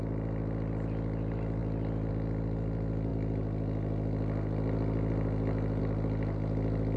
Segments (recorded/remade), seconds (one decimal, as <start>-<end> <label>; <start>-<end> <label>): 0.0-7.0 recorded